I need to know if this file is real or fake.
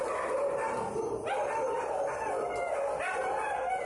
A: real